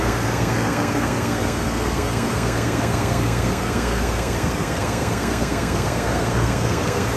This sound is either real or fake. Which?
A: fake